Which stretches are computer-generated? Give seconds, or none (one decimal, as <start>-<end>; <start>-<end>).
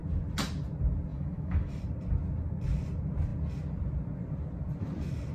1.1-1.8